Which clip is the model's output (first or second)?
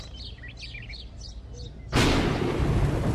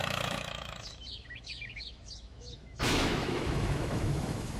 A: second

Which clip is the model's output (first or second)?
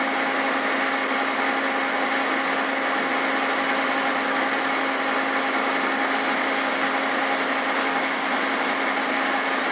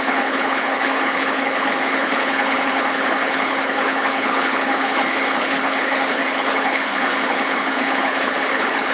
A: second